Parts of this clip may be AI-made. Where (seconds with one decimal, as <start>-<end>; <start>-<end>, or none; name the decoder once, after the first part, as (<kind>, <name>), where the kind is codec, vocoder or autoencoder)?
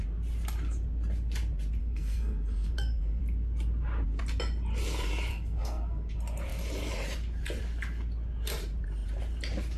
1.8-3.2 (codec, SNAC); 5.3-6.1